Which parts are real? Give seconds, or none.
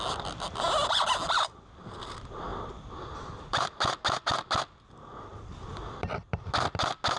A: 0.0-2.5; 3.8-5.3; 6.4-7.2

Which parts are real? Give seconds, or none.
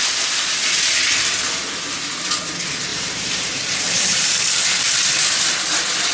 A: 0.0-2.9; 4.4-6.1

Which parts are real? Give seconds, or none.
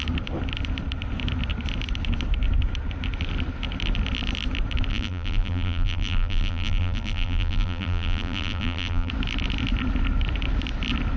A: 0.0-4.9; 9.1-11.2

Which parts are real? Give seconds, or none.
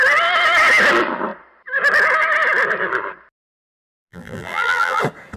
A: 0.0-4.0; 5.0-5.4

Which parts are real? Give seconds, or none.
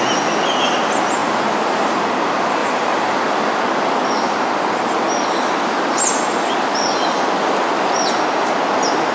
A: 0.0-1.2; 2.0-2.6; 3.2-9.1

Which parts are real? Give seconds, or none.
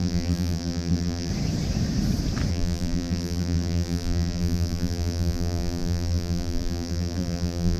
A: 1.3-2.5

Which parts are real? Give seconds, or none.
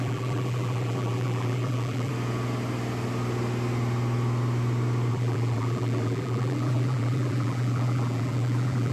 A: 2.1-5.1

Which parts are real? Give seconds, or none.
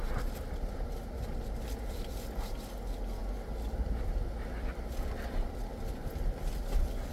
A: 0.0-7.1